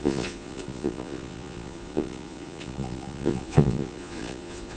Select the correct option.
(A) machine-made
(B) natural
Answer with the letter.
A